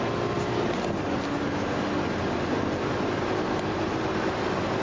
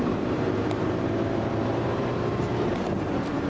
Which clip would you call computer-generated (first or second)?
second